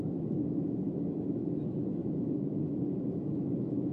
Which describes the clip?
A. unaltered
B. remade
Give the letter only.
B